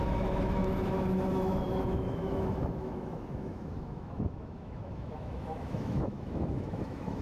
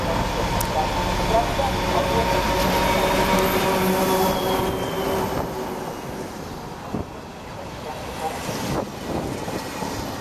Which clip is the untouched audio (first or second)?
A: second